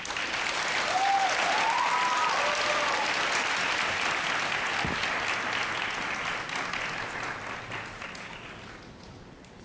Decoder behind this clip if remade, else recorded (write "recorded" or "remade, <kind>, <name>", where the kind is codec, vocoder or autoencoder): recorded